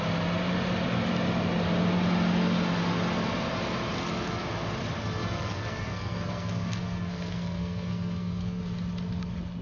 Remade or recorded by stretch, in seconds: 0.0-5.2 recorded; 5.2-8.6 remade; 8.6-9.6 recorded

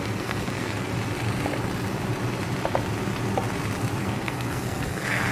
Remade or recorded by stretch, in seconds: 0.0-0.9 remade; 0.9-4.0 recorded; 4.0-5.3 remade

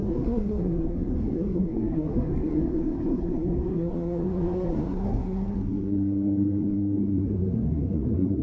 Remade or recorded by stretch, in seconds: 0.0-8.4 remade

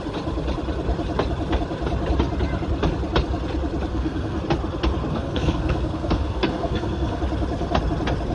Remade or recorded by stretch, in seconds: 0.0-3.9 recorded; 3.9-4.4 remade; 4.4-5.1 recorded; 5.1-7.2 remade; 7.2-8.3 recorded

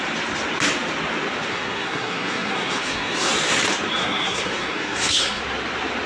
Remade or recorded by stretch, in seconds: 0.0-1.5 recorded; 1.5-3.3 remade; 3.3-4.0 recorded; 4.0-5.4 remade; 5.4-6.1 recorded